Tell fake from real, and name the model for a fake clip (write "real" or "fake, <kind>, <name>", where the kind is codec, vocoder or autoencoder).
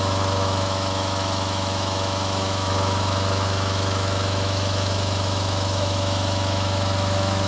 fake, autoencoder, DAC-VAE